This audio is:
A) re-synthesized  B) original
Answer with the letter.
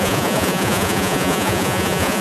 A